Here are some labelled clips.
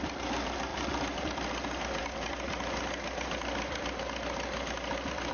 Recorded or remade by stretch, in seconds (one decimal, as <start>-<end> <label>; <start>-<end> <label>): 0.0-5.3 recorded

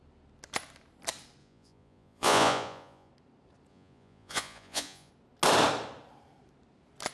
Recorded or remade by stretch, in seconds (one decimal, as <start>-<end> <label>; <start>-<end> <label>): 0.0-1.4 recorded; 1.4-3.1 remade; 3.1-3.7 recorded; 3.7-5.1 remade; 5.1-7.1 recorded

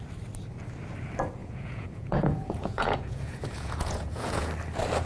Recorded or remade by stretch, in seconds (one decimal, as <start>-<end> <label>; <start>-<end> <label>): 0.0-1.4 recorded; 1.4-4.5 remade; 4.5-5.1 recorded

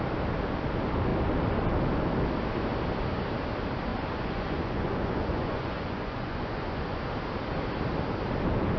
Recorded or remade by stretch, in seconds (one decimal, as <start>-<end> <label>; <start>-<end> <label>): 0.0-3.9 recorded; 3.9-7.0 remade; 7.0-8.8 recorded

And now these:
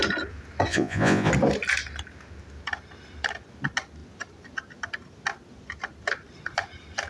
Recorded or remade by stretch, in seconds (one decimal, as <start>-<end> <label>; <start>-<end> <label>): 0.0-0.7 recorded; 0.7-1.3 remade; 1.3-7.1 recorded